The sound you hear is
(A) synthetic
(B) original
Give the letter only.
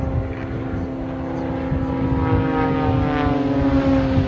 B